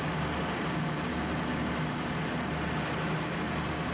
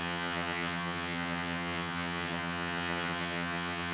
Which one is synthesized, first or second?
second